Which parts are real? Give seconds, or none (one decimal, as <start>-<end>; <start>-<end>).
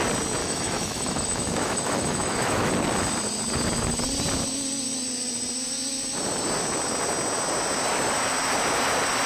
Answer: 0.0-0.4; 2.7-9.3